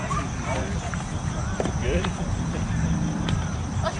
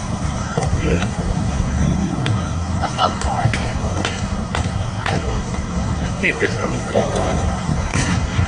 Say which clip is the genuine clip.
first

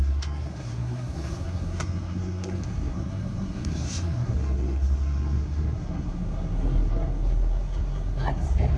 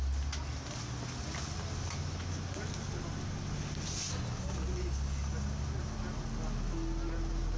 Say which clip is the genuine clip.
second